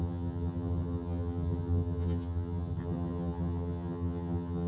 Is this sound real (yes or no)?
no